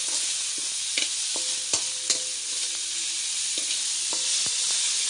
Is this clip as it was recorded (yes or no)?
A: yes